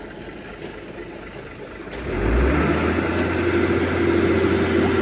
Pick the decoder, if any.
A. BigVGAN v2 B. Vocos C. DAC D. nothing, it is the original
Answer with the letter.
D